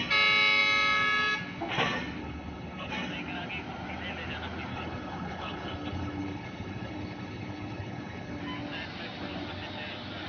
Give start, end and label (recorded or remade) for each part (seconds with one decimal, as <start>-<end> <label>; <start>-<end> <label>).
0.0-2.2 recorded; 2.2-2.9 remade; 2.9-4.7 recorded; 4.7-8.4 remade; 8.4-10.3 recorded